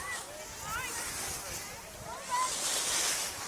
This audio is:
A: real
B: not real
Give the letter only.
A